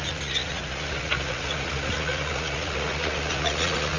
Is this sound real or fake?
fake